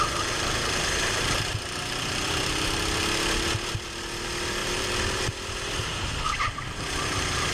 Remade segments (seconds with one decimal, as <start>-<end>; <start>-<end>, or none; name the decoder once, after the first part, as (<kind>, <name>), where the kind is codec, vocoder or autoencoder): 4.6-5.3 (vocoder, BigVGAN v2)